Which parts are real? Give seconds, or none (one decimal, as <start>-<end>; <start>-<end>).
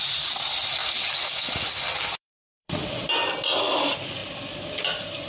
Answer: 0.8-2.2; 2.8-3.6; 4.2-5.3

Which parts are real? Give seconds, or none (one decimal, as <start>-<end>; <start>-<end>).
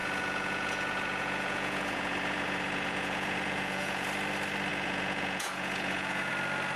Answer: 4.1-4.7; 6.3-6.8